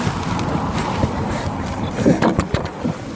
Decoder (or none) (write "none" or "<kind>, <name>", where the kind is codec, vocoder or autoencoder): none